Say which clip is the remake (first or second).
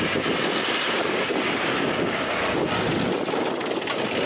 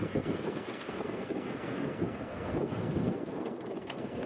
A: second